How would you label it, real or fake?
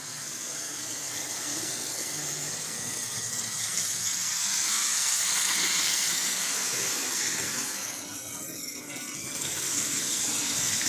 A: fake